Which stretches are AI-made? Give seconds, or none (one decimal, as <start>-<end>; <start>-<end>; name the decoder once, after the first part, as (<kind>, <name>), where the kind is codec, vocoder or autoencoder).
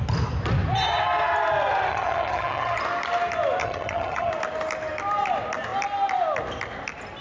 1.9-2.8 (vocoder, HiFi-GAN); 3.6-4.3